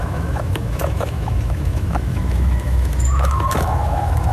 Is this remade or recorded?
remade